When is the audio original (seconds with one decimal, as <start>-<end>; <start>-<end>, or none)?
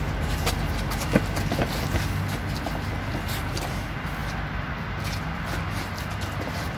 0.0-6.8